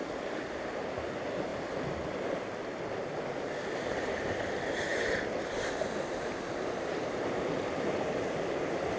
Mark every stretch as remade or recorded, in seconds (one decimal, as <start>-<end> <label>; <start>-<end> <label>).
0.0-9.0 recorded